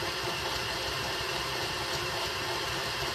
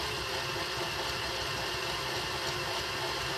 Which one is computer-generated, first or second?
first